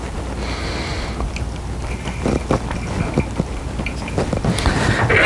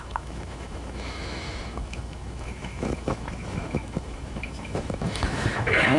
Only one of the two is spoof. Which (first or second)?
second